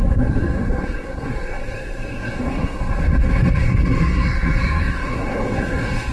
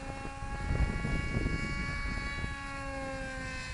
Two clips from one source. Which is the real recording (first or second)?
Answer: second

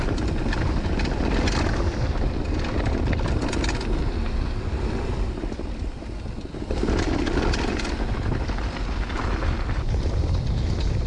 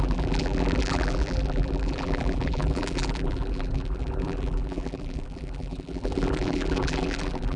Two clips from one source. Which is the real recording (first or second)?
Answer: first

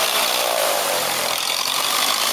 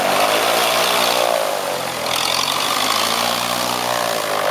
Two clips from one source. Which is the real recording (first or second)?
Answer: second